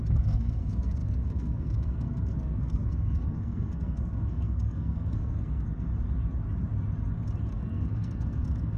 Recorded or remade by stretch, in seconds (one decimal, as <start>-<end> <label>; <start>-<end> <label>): 0.0-5.9 remade; 5.9-7.5 recorded; 7.5-8.8 remade